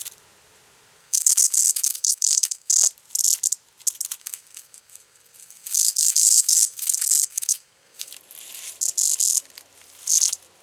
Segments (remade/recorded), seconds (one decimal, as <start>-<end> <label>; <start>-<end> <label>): 0.0-1.0 recorded; 1.0-2.7 remade; 2.7-4.2 recorded; 4.2-8.1 remade; 8.1-10.6 recorded